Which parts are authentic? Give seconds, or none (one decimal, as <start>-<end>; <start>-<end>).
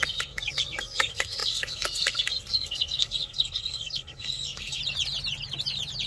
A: 4.8-6.1